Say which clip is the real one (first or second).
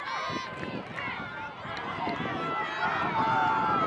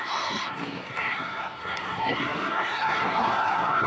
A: first